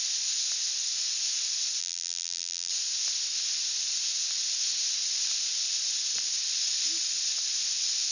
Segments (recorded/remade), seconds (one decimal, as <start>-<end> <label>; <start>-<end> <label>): 0.0-1.8 recorded; 1.8-2.7 remade; 2.7-8.1 recorded